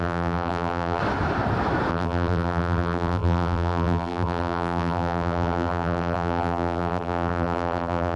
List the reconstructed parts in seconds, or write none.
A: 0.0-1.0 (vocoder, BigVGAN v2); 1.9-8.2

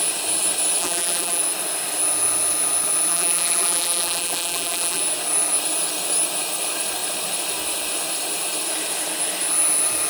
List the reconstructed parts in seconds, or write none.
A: 0.8-1.4 (vocoder, BigVGAN v2); 3.1-5.0

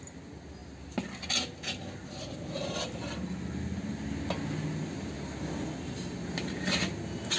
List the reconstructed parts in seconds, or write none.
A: none